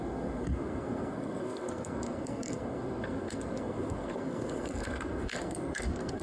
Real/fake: fake